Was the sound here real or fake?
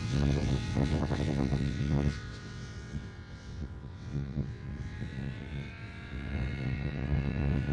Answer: fake